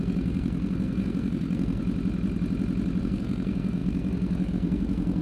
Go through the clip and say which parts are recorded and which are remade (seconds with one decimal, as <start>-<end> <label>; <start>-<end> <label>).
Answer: 0.0-1.8 remade; 1.8-3.0 recorded; 3.0-5.2 remade